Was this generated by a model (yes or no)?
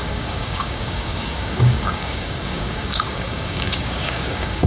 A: yes